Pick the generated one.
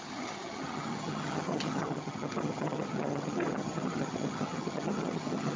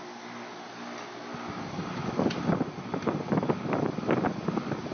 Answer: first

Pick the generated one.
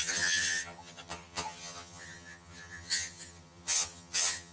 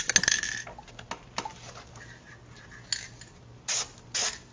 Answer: first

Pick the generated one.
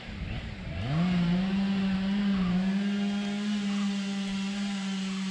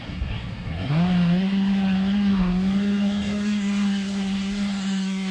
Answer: second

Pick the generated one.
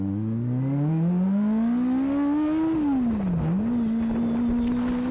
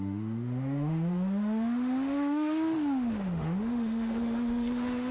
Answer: second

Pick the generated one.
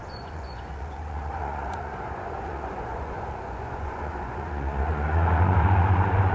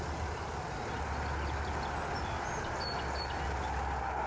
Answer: first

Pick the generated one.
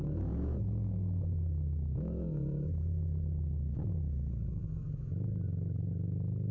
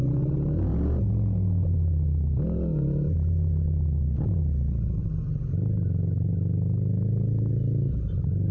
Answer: first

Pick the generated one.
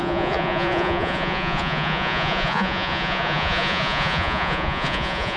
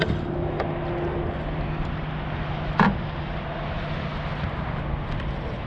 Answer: first